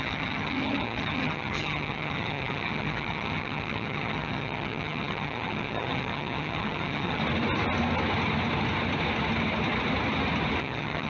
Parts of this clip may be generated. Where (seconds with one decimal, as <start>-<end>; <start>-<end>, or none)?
0.0-7.2; 10.6-11.1